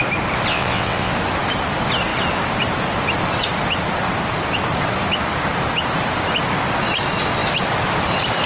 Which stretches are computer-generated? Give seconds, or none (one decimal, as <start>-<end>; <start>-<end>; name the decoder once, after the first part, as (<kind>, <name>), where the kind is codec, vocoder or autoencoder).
0.5-1.1 (vocoder, WaveNeXt)